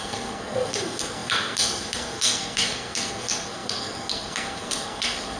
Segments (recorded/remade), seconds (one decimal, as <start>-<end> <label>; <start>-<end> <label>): 0.0-5.4 remade